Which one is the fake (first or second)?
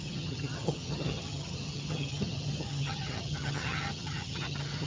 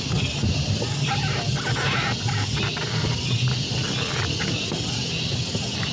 first